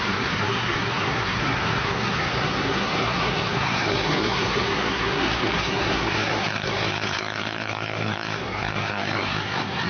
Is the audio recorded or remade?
remade